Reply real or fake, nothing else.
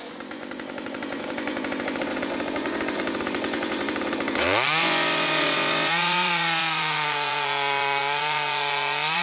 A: fake